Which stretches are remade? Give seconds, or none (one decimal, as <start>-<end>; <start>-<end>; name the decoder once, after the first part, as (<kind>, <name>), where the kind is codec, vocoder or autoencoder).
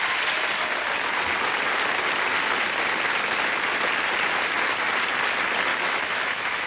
5.7-6.7 (autoencoder, DAC-VAE)